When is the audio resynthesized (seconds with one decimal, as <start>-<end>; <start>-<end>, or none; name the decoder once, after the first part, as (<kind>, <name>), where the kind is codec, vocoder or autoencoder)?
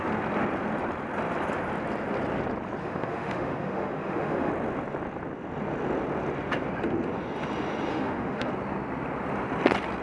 2.8-4.5 (autoencoder, DAC-VAE); 7.9-8.5